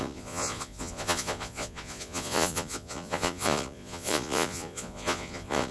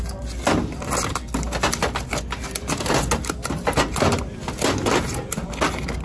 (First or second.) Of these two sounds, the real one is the second